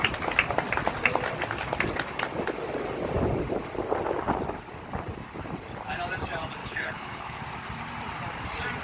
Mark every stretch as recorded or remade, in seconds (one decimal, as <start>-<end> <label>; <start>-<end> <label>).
0.0-6.6 recorded; 6.6-7.4 remade; 7.4-8.8 recorded